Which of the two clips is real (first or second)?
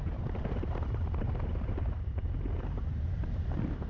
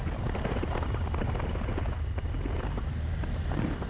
second